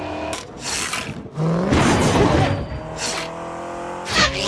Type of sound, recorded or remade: recorded